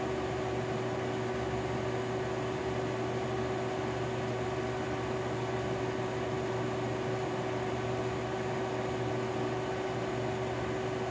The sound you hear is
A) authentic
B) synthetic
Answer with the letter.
A